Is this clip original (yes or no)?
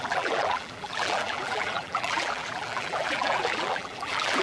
no